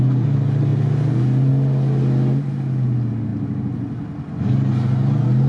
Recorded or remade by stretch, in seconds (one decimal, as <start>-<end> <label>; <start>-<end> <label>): 0.0-5.5 recorded